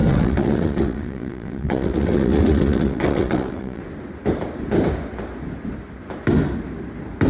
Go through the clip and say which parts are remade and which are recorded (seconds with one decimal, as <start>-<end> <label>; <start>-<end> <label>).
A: 0.0-3.8 remade; 3.8-7.3 recorded